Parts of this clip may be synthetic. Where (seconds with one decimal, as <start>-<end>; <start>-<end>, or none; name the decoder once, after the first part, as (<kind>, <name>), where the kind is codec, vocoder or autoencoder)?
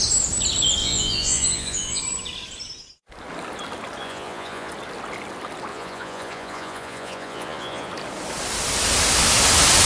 0.8-2.0 (vocoder, Vocos); 4.0-4.7; 5.7-7.9